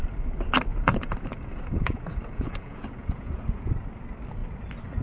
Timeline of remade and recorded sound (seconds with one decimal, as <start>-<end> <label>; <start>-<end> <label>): 0.0-0.7 recorded; 0.7-3.7 remade; 3.7-5.0 recorded